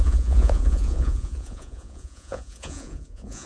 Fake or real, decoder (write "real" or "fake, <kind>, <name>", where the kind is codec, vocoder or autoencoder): fake, vocoder, Vocos